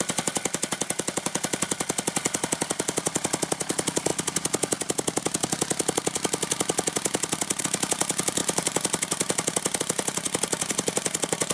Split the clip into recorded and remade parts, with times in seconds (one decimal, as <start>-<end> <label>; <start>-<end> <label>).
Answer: 0.0-4.1 remade; 4.1-7.6 recorded; 7.6-11.5 remade